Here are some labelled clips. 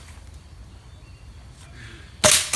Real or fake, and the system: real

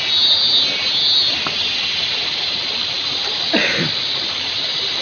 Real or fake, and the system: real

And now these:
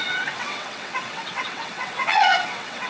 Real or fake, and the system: fake, vocoder, WaveNeXt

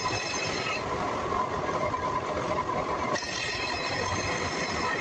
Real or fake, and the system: fake, vocoder, BigVGAN v2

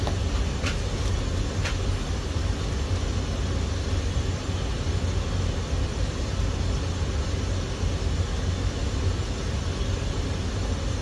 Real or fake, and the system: real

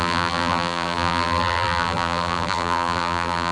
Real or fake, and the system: fake, vocoder, BigVGAN v2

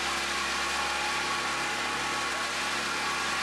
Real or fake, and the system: real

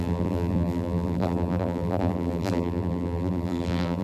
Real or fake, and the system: fake, vocoder, BigVGAN v2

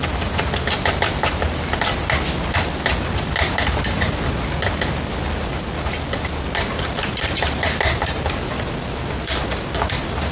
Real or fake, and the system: real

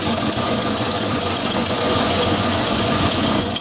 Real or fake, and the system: fake, vocoder, Vocos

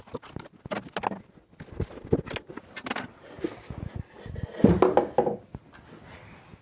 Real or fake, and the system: real